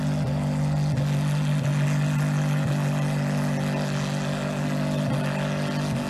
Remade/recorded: recorded